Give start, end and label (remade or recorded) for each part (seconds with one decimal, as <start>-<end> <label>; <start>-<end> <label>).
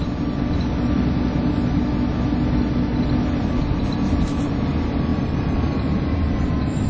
0.0-5.1 recorded; 5.1-6.3 remade; 6.3-6.9 recorded